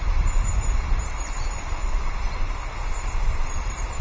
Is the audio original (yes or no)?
no